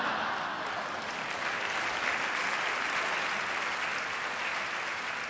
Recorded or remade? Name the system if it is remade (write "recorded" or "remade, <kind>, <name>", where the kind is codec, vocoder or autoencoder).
recorded